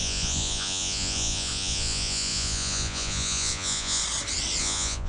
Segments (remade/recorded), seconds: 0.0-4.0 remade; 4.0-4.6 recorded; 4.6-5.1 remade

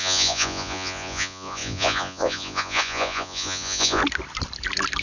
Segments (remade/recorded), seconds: 0.0-4.0 remade; 4.0-5.0 recorded

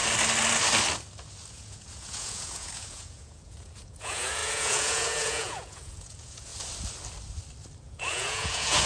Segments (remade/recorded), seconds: 0.0-1.5 recorded; 1.5-6.5 remade; 6.5-7.8 recorded; 7.8-8.9 remade

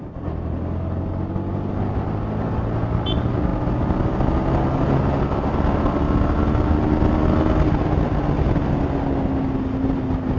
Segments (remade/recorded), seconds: 0.0-10.4 recorded

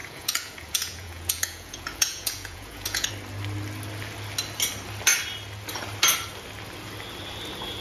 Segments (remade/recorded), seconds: 0.0-3.1 remade; 3.1-7.8 recorded